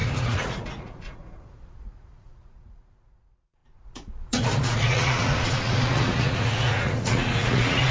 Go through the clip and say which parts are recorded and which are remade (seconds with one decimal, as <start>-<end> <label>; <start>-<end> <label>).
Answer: 0.0-7.9 remade